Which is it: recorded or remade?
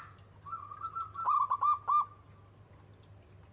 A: recorded